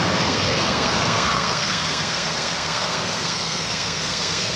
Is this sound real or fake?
fake